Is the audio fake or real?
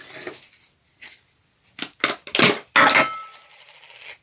real